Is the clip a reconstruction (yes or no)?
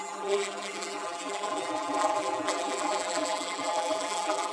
yes